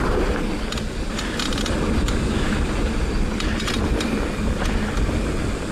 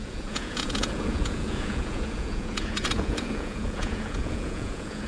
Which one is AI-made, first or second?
second